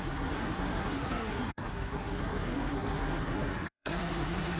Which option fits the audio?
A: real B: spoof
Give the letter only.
B